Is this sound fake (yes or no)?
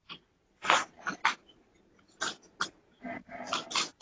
no